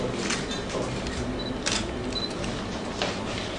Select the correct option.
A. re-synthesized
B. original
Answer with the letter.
B